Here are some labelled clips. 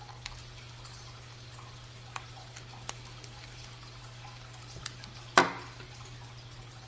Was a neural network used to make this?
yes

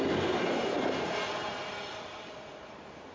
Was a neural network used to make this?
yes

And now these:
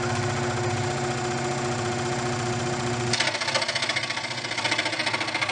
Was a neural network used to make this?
no